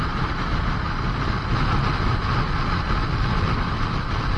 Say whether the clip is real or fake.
real